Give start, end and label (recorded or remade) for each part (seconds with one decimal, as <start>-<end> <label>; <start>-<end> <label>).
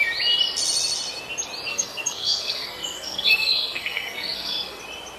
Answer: 0.0-1.7 recorded; 1.7-4.8 remade; 4.8-5.2 recorded